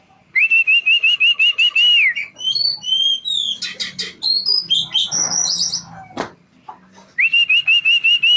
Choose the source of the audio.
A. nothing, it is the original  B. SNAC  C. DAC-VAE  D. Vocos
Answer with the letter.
A